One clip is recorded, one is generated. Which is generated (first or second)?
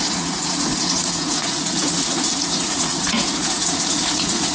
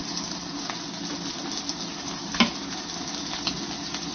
first